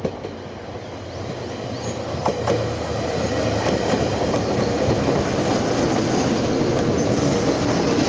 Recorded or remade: recorded